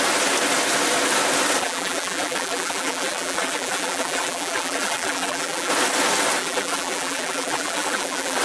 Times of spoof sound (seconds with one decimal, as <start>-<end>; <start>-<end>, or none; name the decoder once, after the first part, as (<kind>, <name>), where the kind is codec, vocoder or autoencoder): 1.6-5.7 (vocoder, BigVGAN v2); 6.4-8.4